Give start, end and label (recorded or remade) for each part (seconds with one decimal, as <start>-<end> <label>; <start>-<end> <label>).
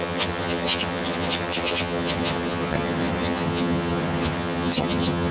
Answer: 0.0-5.3 remade